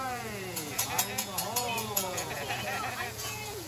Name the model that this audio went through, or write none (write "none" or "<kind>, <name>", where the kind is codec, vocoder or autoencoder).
vocoder, Vocos